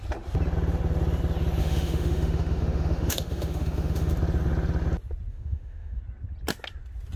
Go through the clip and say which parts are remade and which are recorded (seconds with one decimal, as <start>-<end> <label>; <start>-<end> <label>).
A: 0.0-1.6 recorded; 1.6-4.1 remade; 4.1-5.3 recorded; 5.3-6.0 remade; 6.0-7.2 recorded